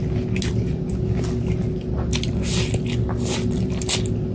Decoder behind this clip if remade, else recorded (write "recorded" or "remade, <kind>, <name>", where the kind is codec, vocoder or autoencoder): recorded